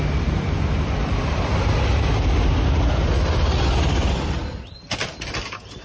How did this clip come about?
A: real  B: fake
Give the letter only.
A